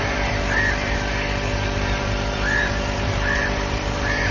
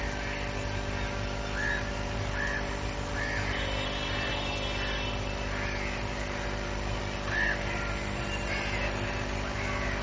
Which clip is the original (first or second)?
second